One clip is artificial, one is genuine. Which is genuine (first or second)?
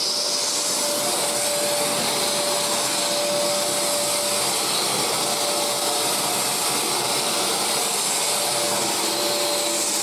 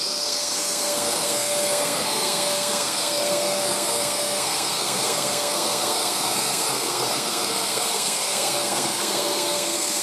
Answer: first